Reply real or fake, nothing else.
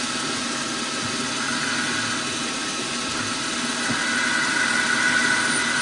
real